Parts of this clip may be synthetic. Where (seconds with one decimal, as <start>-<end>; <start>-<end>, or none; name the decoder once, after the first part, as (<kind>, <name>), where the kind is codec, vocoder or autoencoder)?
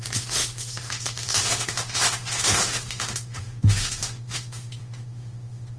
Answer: 0.0-5.8 (autoencoder, DAC-VAE)